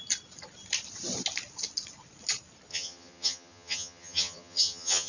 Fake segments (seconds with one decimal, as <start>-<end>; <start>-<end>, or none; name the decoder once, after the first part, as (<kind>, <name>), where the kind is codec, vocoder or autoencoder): 2.7-5.1 (vocoder, HiFi-GAN)